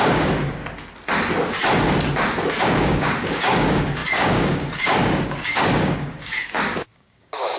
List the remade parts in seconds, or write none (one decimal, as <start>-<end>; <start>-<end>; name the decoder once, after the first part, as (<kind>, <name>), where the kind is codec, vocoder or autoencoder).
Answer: 0.0-0.6 (codec, DAC); 2.6-7.6